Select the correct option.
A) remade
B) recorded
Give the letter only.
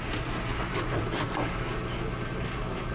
B